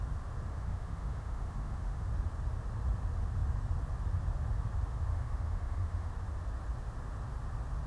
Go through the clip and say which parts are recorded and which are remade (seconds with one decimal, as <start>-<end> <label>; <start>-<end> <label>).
0.0-0.5 recorded; 0.5-2.1 remade; 2.1-5.1 recorded; 5.1-6.1 remade; 6.1-7.9 recorded